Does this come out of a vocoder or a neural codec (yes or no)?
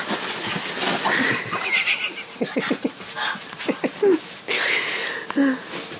no